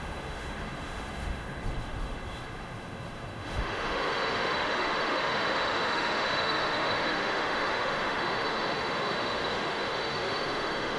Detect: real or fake fake